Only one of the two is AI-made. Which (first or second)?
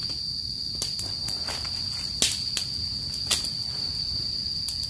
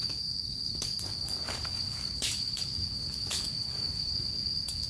second